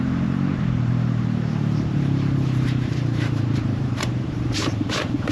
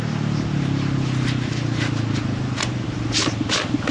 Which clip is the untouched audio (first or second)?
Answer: second